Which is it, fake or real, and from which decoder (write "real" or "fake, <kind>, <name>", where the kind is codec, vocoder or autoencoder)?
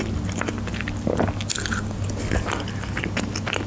real